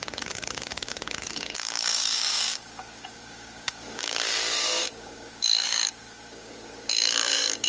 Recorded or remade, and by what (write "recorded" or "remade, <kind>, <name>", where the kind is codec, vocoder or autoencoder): remade, codec, DAC